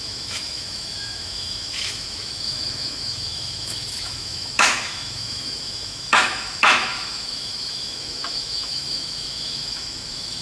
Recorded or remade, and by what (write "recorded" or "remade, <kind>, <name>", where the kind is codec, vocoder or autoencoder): remade, autoencoder, DAC-VAE